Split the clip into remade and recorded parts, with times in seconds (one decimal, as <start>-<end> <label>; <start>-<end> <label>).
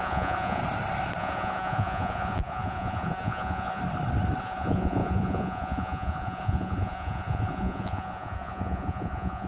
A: 0.0-0.6 remade; 0.6-1.2 recorded; 1.2-3.8 remade; 3.8-4.4 recorded; 4.4-9.5 remade